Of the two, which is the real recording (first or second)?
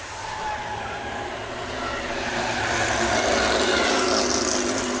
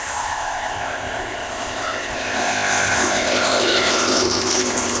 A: first